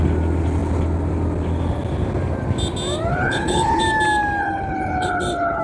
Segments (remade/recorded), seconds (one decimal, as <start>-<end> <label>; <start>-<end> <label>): 0.0-3.1 recorded; 3.1-3.8 remade; 3.8-4.4 recorded; 4.4-5.6 remade